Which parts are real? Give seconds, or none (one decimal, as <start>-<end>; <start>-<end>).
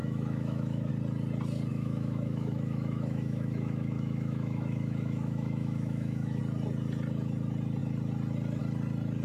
0.9-1.7; 6.4-9.2